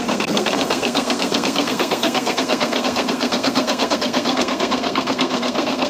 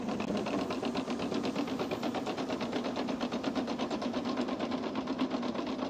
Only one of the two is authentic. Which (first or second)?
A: second